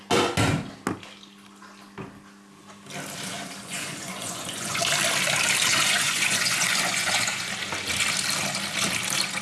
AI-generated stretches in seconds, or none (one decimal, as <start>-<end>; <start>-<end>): 3.6-4.8; 5.7-7.5